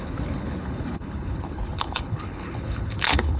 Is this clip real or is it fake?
fake